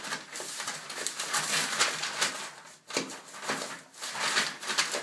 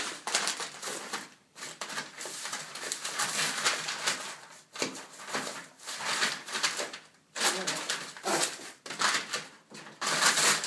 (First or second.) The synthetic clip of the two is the second